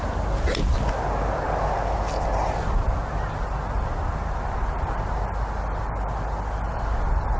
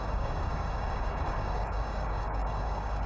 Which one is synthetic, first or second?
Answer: second